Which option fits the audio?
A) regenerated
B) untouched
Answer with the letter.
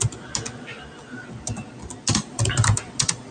B